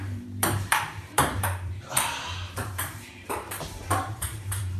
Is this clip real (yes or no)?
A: no